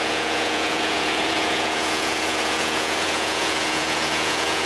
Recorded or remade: remade